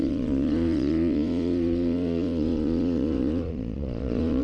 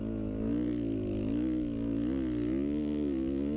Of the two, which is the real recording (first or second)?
second